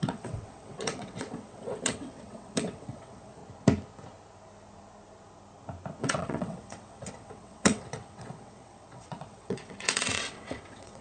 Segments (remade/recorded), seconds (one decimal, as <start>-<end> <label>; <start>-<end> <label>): 0.0-3.4 remade; 3.4-6.0 recorded; 6.0-11.0 remade